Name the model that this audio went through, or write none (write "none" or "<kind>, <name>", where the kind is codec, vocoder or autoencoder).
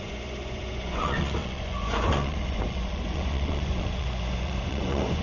vocoder, Vocos